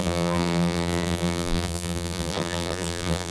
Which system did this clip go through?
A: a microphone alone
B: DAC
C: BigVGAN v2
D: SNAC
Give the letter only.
C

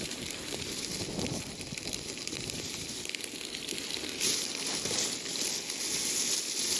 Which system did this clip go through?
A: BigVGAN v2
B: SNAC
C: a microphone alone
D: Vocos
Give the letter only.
A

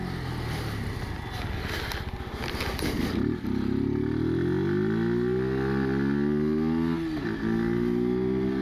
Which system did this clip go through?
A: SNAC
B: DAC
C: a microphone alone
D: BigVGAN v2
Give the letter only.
C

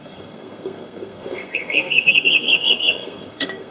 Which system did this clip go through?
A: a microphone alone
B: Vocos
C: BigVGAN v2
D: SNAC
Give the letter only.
D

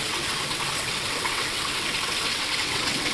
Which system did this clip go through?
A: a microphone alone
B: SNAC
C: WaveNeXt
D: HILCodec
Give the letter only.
C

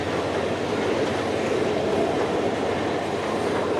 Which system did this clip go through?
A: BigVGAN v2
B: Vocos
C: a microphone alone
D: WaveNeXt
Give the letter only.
C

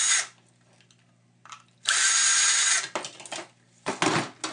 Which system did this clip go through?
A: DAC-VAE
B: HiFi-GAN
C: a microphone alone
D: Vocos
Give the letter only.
C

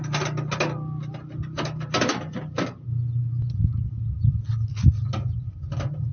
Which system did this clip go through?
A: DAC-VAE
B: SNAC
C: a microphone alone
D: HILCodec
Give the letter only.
C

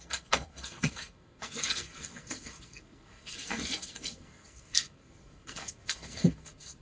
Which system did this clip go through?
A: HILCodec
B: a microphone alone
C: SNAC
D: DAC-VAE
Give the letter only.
C